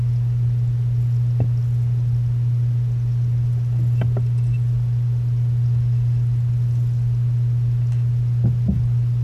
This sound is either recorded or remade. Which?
recorded